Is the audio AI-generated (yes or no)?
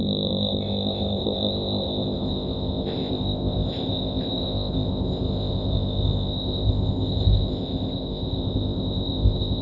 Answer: yes